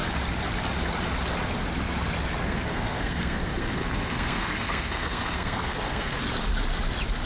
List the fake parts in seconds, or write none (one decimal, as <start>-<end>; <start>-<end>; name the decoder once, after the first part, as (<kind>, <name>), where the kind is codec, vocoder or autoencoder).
2.4-6.2 (codec, SNAC)